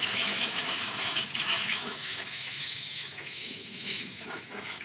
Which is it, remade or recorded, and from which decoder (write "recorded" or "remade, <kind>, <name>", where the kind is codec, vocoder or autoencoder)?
remade, autoencoder, DAC-VAE